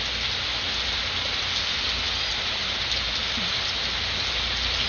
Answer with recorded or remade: recorded